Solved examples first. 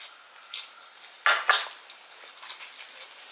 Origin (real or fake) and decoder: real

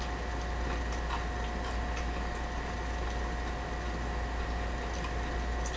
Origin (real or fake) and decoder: real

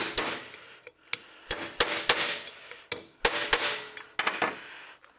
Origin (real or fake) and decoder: real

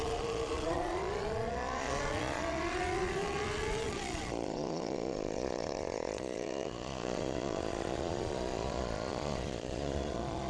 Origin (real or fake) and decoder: fake, vocoder, Vocos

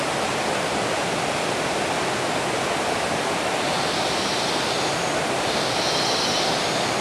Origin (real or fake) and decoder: real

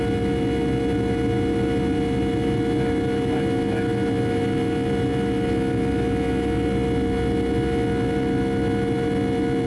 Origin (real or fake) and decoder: real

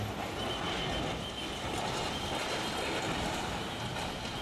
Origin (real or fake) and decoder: real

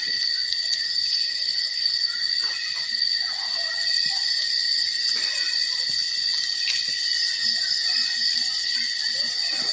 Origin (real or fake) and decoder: real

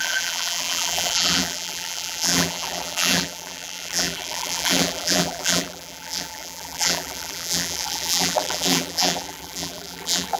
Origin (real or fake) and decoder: fake, vocoder, BigVGAN v2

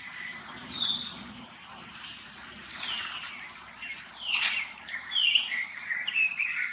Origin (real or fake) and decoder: fake, vocoder, BigVGAN v2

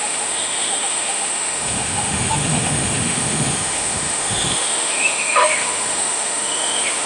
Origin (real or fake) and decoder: fake, autoencoder, DAC-VAE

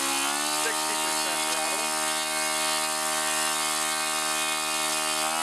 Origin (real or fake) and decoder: real